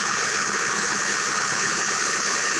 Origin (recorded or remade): remade